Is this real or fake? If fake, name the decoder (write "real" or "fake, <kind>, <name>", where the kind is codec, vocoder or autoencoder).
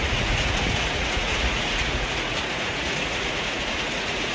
fake, vocoder, Vocos